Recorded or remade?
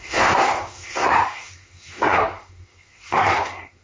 remade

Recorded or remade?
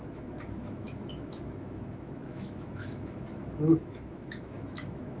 remade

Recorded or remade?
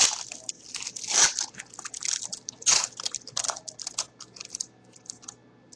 recorded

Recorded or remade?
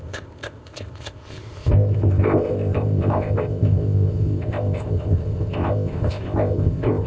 remade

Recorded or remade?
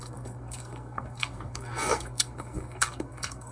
remade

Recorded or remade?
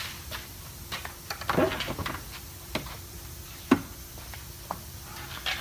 recorded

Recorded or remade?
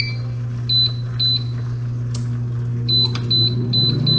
recorded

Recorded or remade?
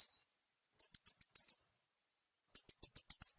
recorded